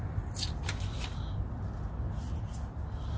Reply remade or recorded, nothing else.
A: recorded